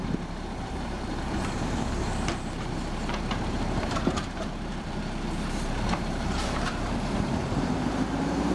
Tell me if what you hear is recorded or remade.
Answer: remade